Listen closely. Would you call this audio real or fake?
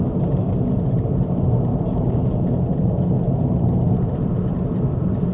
fake